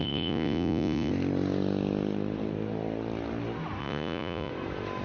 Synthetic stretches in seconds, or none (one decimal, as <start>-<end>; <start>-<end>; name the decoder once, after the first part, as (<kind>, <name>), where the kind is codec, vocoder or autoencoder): 0.0-1.1 (vocoder, Vocos); 3.8-4.5